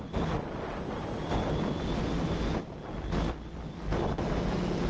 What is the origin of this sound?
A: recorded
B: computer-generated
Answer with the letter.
A